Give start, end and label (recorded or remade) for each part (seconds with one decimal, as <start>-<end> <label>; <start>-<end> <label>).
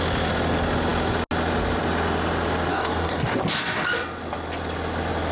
0.0-2.7 recorded; 2.7-3.4 remade; 3.4-5.3 recorded